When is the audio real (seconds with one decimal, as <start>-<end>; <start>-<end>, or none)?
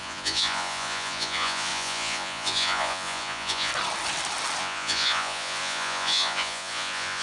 3.7-4.6